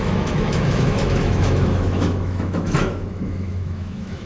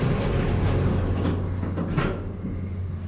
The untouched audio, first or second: second